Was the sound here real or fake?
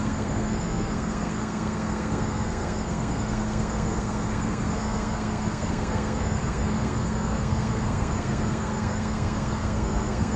fake